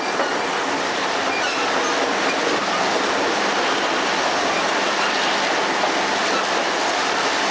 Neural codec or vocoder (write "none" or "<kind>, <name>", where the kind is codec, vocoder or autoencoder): none